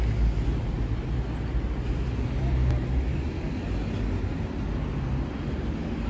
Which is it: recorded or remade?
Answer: recorded